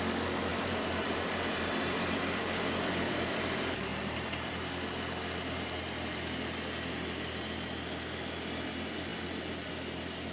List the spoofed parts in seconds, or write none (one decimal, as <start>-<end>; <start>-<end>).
0.5-2.1; 3.9-4.5